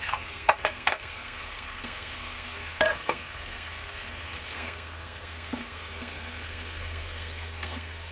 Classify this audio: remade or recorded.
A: remade